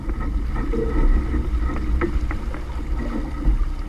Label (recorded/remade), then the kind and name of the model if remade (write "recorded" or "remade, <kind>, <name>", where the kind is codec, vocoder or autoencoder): recorded